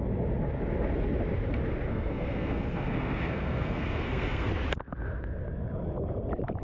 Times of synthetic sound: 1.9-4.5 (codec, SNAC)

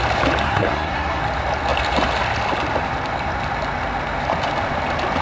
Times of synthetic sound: 0.4-1.2 (codec, SNAC)

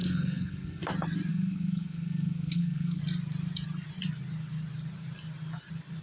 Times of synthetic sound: 0.0-0.8 (codec, SNAC); 1.3-3.0

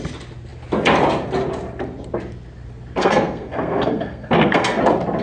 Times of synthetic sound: 3.0-4.8 (codec, SNAC)

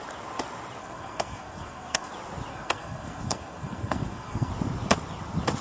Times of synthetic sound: 0.8-2.1 (codec, SNAC); 2.5-4.5

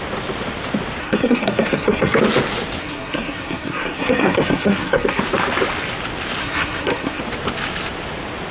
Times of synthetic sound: 1.0-2.2 (codec, SNAC); 2.8-5.2; 6.4-7.2

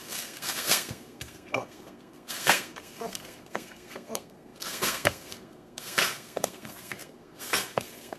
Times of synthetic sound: 0.0-8.2 (codec, SNAC)